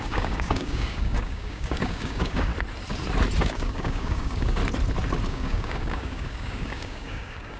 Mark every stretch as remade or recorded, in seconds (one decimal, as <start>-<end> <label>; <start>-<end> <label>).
0.0-2.5 remade; 2.5-3.4 recorded; 3.4-4.6 remade; 4.6-5.3 recorded; 5.3-7.6 remade